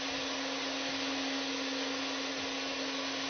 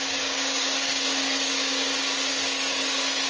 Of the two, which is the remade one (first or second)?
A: second